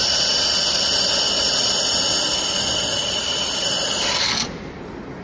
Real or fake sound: real